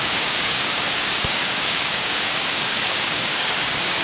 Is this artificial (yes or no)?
yes